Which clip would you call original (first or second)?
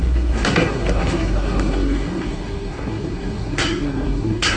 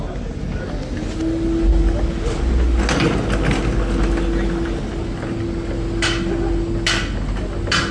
second